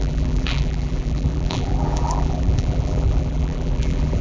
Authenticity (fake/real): fake